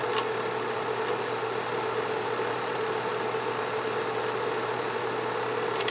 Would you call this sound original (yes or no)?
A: yes